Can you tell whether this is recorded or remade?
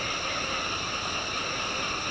recorded